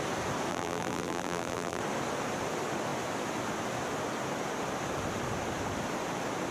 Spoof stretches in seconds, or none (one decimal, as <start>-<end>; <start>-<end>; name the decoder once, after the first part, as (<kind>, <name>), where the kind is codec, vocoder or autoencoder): 0.5-1.8 (vocoder, BigVGAN v2)